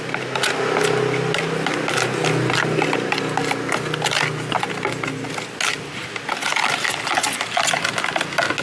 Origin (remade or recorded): recorded